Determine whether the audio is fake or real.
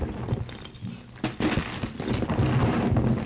real